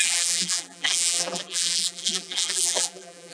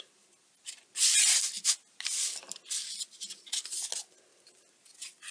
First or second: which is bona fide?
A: second